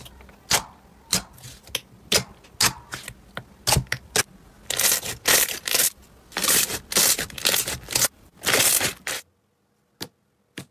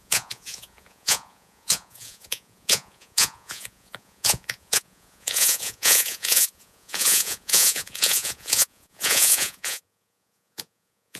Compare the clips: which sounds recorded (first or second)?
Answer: first